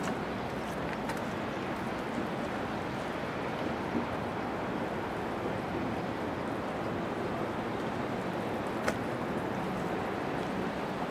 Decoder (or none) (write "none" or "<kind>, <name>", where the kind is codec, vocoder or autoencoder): none